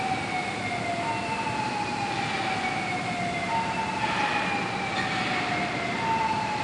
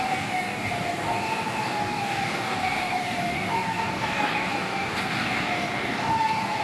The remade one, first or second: second